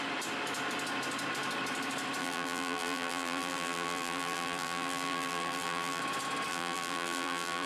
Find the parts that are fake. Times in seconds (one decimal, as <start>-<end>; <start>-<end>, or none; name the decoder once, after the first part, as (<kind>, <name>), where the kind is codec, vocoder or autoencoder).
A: 2.2-6.0 (vocoder, BigVGAN v2); 6.5-7.7